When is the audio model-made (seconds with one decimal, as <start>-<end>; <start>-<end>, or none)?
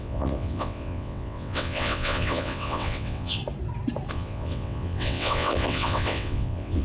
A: 0.0-3.4; 4.1-6.8